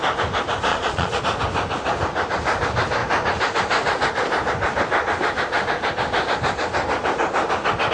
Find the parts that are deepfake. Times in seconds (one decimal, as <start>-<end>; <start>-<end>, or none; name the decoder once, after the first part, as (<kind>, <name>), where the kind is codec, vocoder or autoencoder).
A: 0.7-1.2 (vocoder, Vocos)